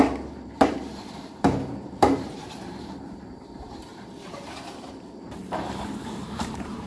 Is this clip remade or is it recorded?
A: remade